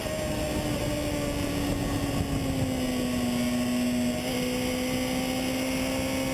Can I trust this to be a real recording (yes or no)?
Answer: yes